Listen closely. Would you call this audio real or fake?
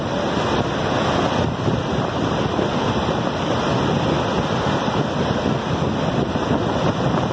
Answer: real